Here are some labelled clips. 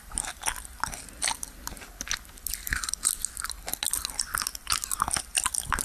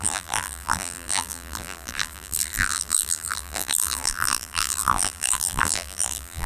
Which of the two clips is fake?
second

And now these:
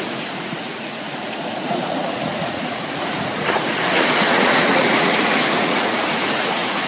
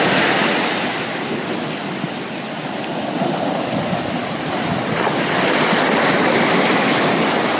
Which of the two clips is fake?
first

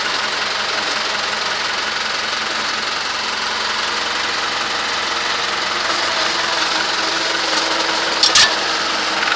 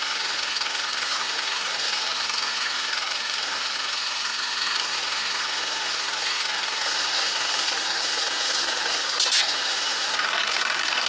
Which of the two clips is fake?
second